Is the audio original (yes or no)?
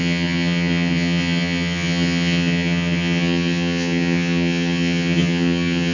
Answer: no